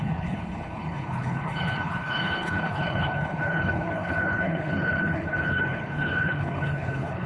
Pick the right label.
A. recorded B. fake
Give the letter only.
B